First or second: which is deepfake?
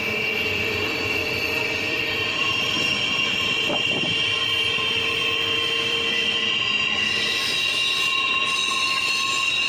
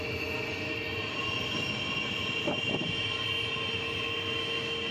first